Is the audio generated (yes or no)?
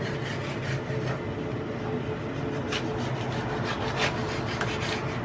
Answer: no